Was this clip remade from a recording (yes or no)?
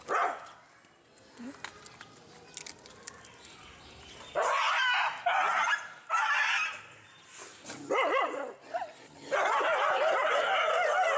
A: no